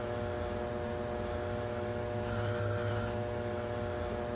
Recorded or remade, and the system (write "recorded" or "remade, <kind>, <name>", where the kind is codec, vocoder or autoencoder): recorded